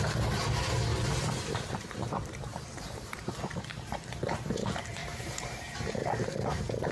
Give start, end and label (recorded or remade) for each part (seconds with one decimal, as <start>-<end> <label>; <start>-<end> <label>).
0.0-0.9 remade; 0.9-1.5 recorded; 1.5-6.9 remade